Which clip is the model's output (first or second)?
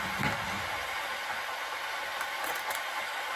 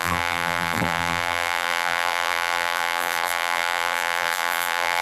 second